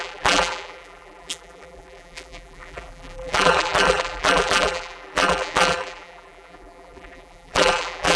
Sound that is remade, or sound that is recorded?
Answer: remade